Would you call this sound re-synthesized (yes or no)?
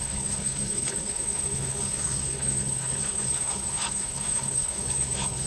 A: yes